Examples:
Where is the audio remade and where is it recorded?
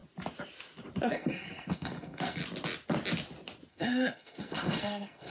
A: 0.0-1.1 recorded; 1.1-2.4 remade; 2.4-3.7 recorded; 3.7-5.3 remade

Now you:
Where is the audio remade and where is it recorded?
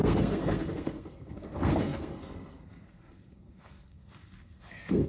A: 0.0-5.1 remade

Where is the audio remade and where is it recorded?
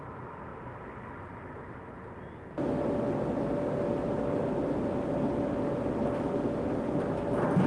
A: 0.0-7.7 recorded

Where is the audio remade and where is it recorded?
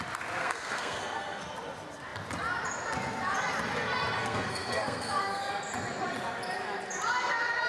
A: 0.0-0.4 recorded; 0.4-1.4 remade; 1.4-4.2 recorded; 4.2-5.5 remade; 5.5-7.7 recorded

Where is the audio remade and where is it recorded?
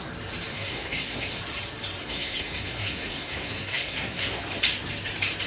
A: 0.0-0.5 recorded; 0.5-1.4 remade; 1.4-2.0 recorded; 2.0-4.4 remade; 4.4-5.5 recorded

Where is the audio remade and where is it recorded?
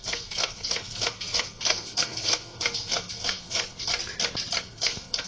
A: 0.0-3.9 remade; 3.9-4.6 recorded; 4.6-5.3 remade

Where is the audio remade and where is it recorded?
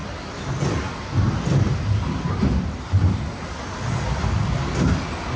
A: 0.0-5.4 recorded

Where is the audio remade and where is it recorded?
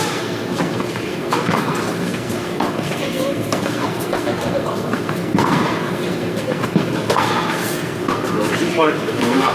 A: 0.0-9.5 remade